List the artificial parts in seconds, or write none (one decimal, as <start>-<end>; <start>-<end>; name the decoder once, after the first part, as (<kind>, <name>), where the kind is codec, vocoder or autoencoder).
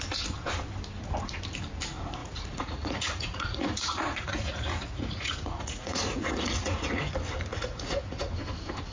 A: 2.2-7.0 (vocoder, Vocos); 7.5-8.3